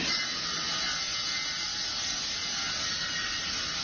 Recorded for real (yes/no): yes